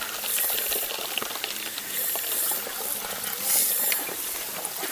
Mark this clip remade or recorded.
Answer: recorded